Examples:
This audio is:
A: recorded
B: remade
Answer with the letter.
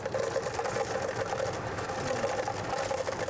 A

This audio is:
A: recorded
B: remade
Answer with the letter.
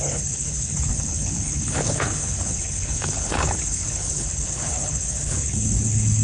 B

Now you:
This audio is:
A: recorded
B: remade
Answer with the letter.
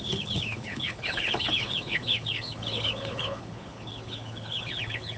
B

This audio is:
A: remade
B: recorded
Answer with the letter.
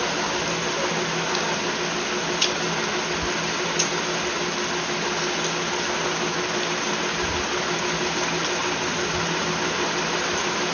B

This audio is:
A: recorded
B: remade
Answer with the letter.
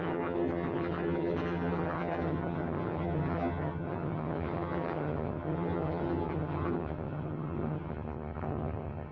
B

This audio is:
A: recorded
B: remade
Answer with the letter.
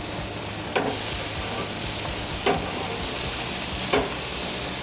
A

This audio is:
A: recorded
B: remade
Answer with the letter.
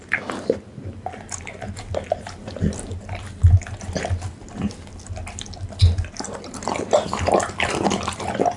A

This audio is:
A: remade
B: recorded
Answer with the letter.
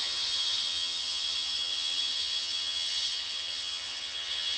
A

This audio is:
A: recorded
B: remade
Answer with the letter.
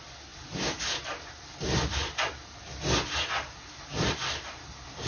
A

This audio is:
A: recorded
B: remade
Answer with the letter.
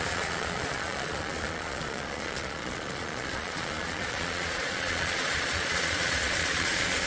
B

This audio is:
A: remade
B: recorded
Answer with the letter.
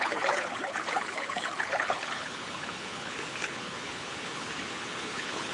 A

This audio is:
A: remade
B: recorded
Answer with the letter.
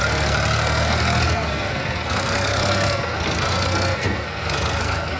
A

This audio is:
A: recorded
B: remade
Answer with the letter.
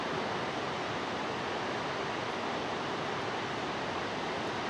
A